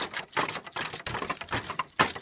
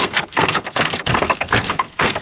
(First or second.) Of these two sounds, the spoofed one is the second